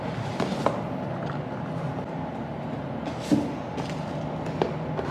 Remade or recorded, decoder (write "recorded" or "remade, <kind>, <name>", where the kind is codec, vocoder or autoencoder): recorded